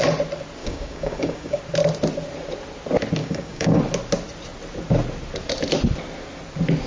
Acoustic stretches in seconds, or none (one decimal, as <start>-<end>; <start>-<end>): 0.0-0.6; 1.6-3.2; 3.8-6.9